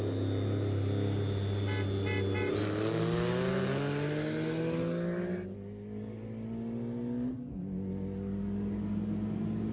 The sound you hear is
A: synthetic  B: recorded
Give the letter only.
B